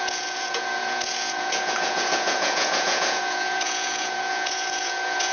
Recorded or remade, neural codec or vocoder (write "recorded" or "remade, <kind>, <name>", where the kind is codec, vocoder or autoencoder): remade, vocoder, Vocos